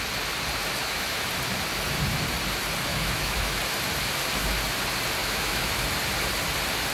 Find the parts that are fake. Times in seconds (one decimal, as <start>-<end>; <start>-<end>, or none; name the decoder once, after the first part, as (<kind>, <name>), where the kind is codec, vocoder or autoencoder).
0.8-1.3 (autoencoder, DAC-VAE); 2.9-3.6; 5.2-5.7